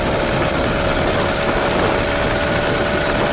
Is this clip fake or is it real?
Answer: real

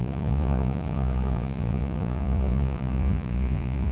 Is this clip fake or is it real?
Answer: fake